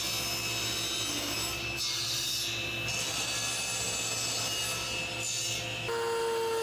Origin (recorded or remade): recorded